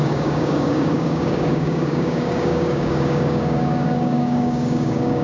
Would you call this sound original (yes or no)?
no